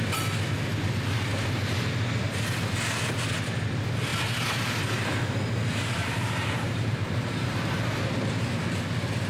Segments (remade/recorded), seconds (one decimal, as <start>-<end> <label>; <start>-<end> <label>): 0.0-6.0 recorded; 6.0-8.5 remade; 8.5-9.3 recorded